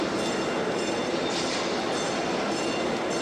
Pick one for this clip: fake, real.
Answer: real